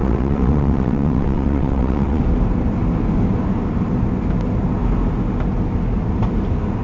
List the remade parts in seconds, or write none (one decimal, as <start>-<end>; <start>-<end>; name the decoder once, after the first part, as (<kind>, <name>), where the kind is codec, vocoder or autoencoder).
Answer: 0.0-2.2 (vocoder, WaveNeXt)